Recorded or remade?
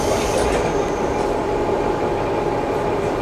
remade